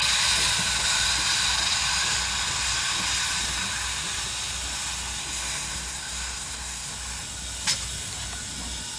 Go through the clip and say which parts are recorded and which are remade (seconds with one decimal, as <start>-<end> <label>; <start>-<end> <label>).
0.0-5.2 recorded; 5.2-6.9 remade; 6.9-9.0 recorded

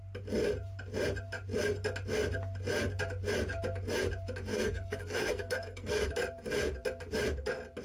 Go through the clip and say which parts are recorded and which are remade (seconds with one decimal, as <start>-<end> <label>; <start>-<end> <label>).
0.0-4.5 recorded; 4.5-6.1 remade; 6.1-7.8 recorded

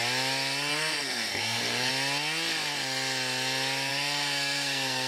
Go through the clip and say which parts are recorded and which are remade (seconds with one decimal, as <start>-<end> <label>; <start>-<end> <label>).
0.0-0.7 recorded; 0.7-1.9 remade; 1.9-3.9 recorded; 3.9-5.1 remade